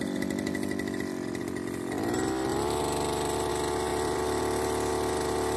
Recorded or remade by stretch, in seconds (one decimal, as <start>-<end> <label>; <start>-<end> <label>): 0.0-1.4 remade; 1.4-3.9 recorded; 3.9-4.4 remade; 4.4-5.6 recorded